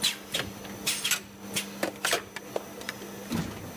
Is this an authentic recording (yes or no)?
yes